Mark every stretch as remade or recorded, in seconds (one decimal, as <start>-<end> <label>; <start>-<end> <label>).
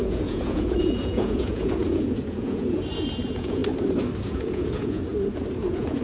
0.0-3.6 remade; 3.6-4.2 recorded; 4.2-5.1 remade; 5.1-5.6 recorded; 5.6-6.0 remade